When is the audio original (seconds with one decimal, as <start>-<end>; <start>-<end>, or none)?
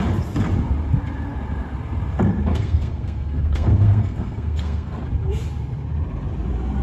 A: 0.0-2.5; 5.0-6.8